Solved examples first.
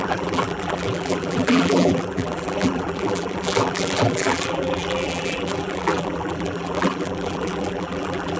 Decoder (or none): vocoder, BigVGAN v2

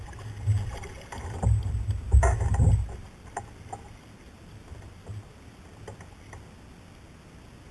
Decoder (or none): none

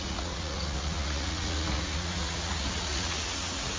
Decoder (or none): vocoder, Vocos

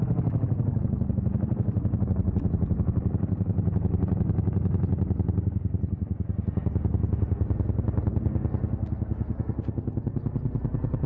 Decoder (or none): none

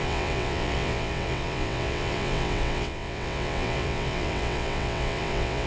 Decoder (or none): vocoder, WaveNeXt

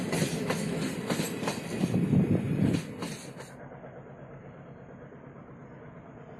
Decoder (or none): none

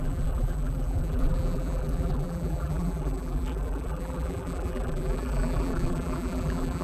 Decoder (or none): vocoder, BigVGAN v2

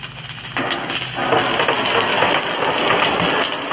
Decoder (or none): none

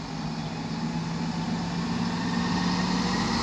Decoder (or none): none